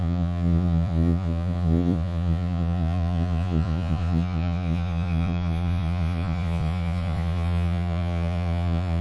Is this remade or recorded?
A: remade